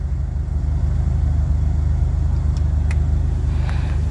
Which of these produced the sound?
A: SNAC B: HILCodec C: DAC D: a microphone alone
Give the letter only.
D